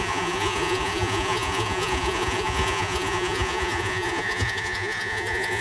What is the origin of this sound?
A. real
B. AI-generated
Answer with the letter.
B